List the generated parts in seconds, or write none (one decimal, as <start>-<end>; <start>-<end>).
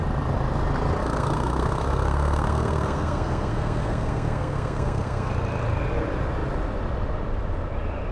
1.0-5.3